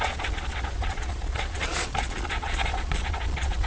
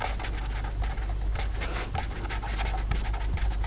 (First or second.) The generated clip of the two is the first